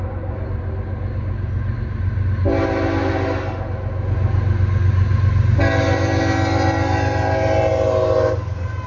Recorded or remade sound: recorded